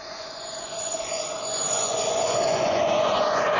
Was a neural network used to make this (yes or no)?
yes